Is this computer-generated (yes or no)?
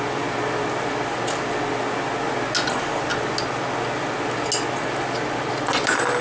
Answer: no